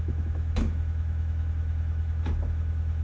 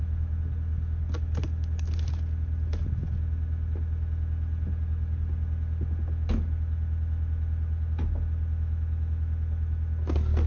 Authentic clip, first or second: second